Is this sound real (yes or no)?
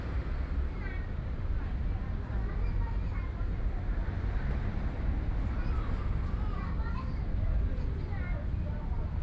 yes